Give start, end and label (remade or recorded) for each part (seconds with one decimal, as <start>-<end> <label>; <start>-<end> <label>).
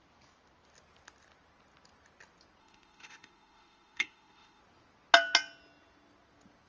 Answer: 0.0-2.6 recorded; 2.6-4.6 remade; 4.6-6.7 recorded